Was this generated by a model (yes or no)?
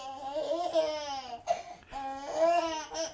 no